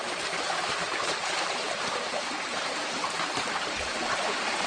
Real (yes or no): no